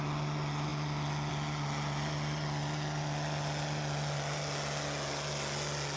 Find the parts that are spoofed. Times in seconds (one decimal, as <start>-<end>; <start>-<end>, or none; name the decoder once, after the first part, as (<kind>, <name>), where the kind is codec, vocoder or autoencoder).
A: none